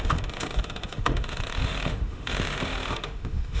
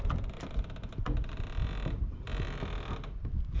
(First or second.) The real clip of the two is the second